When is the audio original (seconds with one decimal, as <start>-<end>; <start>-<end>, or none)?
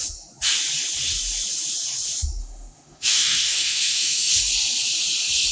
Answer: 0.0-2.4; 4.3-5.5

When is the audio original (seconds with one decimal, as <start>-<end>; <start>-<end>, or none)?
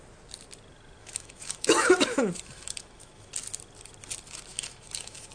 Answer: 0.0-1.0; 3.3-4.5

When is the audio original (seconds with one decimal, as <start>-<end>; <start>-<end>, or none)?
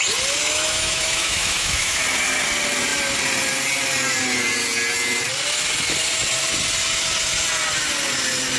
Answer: 0.0-0.4; 2.0-8.6